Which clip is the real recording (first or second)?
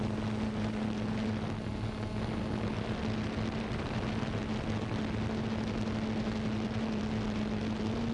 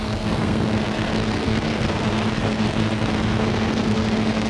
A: first